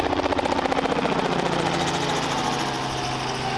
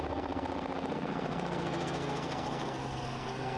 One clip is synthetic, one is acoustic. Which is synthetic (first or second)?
second